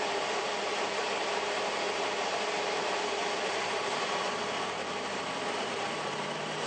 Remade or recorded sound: remade